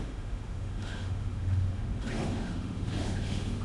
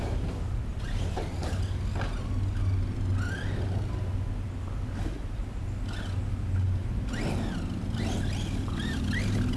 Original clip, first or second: second